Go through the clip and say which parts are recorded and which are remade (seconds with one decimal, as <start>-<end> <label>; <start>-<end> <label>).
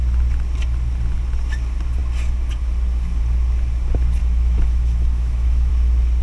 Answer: 0.0-4.2 recorded; 4.2-5.7 remade; 5.7-6.2 recorded